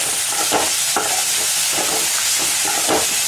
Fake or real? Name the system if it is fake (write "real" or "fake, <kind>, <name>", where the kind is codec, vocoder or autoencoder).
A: real